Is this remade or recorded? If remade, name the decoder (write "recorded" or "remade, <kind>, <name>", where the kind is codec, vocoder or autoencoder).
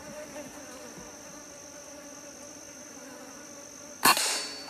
recorded